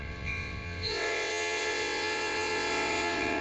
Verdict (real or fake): fake